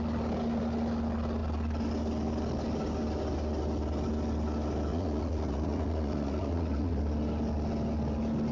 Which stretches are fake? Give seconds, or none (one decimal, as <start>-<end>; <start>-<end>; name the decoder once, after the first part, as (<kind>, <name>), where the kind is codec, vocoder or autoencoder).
4.9-7.0 (vocoder, Vocos)